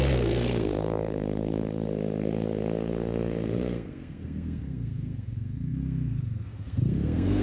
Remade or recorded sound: remade